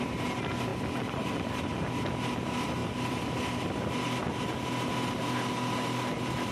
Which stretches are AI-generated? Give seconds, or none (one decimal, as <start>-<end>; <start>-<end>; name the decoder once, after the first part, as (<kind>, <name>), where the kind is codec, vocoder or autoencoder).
0.7-1.6 (vocoder, BigVGAN v2); 2.8-3.4